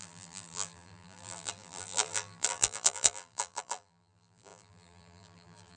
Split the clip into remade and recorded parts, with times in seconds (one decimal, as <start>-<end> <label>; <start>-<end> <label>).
0.0-5.8 remade